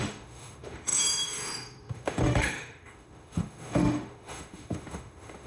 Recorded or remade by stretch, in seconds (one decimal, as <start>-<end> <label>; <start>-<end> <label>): 0.0-5.5 remade